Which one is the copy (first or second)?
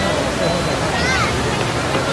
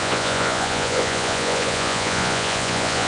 second